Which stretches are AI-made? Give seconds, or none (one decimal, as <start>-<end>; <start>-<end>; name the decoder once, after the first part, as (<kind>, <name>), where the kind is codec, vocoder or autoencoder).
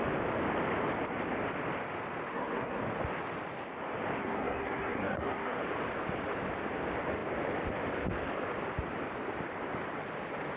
2.3-2.8 (codec, SNAC); 4.2-5.6